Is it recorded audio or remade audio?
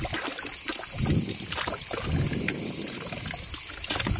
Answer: recorded